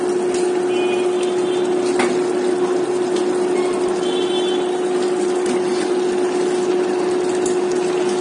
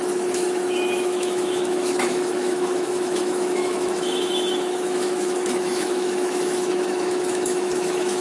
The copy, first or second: second